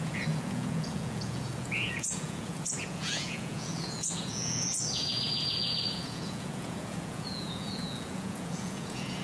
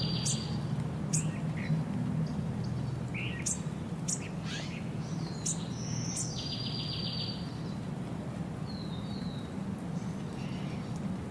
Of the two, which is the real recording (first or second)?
second